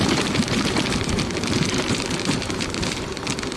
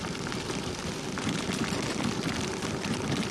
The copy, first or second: first